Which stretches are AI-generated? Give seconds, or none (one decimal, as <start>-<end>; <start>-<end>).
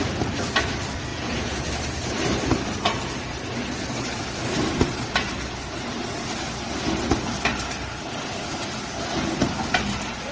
1.1-1.7